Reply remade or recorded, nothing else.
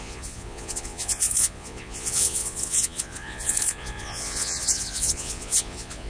remade